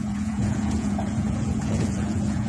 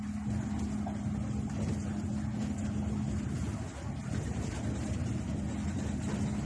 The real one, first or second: second